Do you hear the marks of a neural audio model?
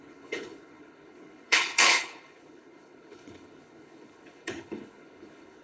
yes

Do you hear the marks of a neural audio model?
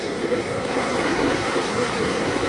yes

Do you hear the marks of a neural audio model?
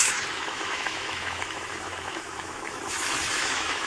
yes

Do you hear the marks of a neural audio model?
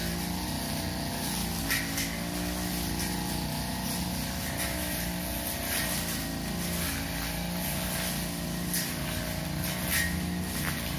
no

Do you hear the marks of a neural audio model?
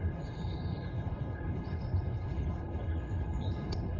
yes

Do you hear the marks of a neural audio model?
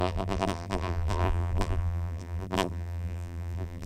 yes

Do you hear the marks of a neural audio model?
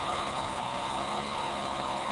yes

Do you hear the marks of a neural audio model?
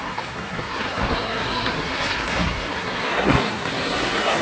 yes